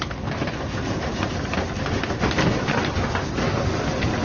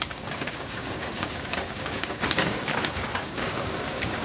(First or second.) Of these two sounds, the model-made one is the second